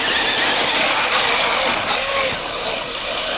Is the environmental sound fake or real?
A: real